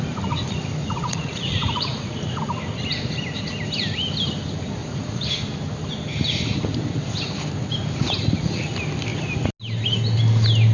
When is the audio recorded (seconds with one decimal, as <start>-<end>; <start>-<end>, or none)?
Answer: 0.0-0.8; 2.4-4.8; 5.3-10.7